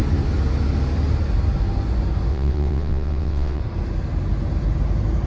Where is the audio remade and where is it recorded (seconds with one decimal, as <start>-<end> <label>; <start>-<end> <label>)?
0.0-2.3 recorded; 2.3-3.6 remade; 3.6-5.3 recorded